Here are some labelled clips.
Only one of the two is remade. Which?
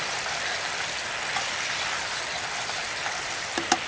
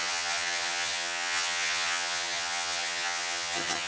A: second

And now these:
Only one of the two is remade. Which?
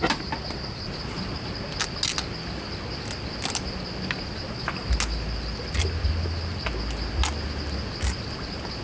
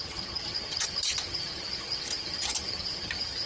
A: second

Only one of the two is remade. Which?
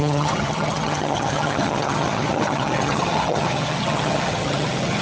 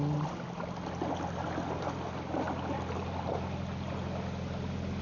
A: first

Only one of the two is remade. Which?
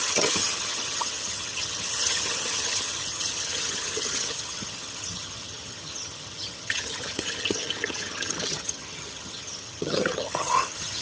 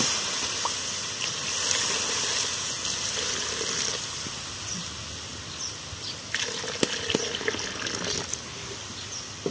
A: first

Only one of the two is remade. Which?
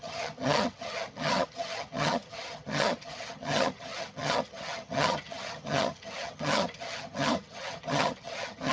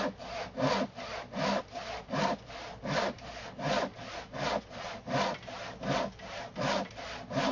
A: first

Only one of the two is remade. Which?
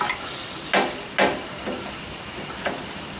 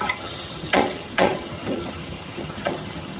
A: second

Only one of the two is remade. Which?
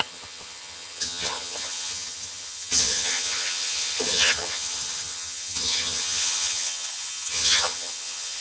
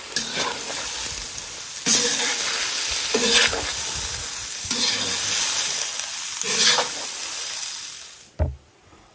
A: first